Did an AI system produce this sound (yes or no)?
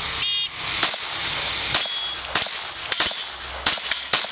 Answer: no